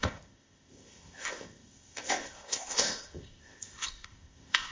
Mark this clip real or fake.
fake